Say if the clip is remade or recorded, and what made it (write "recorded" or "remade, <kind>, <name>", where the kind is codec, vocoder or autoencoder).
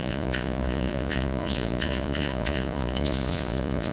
remade, vocoder, Vocos